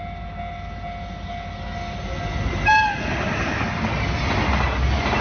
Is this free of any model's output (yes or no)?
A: yes